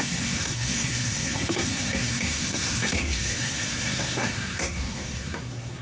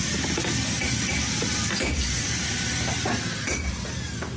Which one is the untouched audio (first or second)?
second